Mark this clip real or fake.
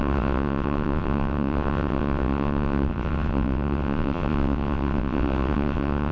fake